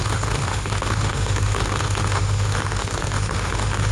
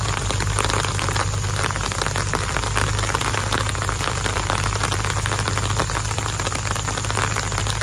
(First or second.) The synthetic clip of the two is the first